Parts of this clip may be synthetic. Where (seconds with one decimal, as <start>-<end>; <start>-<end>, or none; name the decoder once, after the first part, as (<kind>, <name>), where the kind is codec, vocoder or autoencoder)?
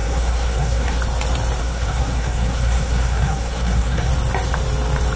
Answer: 0.0-1.0 (codec, SNAC); 1.6-4.1